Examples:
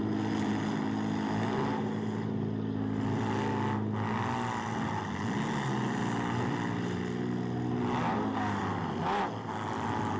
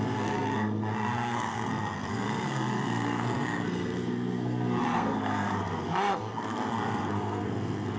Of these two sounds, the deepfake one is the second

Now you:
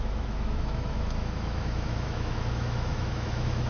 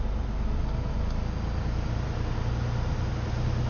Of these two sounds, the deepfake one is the first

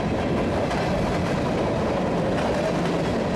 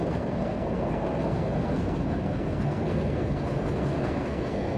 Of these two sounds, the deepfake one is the second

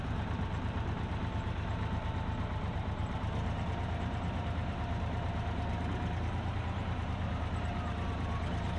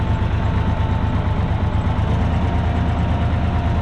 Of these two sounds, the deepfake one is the first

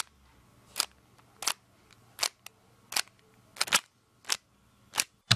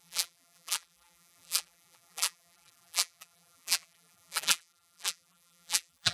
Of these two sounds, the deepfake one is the second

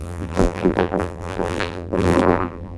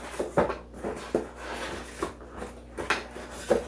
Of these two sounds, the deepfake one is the first